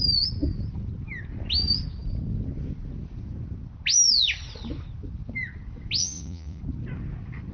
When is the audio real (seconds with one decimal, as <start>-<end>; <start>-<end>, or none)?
0.0-6.0; 6.6-7.5